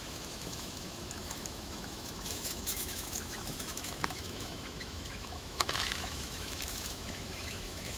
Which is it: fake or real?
fake